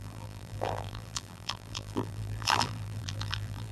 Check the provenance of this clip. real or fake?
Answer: fake